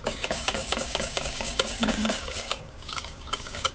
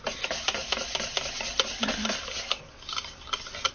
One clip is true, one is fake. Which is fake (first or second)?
first